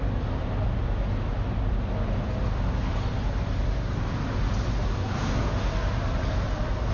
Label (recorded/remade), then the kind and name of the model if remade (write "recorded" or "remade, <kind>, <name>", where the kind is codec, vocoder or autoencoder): recorded